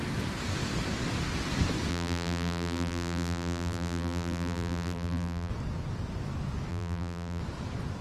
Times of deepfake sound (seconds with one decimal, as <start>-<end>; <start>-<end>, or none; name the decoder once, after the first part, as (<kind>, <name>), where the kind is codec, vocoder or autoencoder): 1.9-5.5 (vocoder, BigVGAN v2); 6.7-7.4